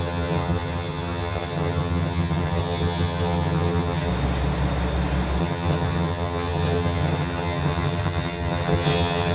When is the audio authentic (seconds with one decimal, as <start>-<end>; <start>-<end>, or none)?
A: 4.1-5.4